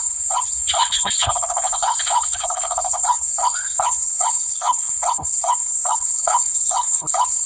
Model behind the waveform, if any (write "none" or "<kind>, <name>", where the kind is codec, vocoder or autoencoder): codec, HILCodec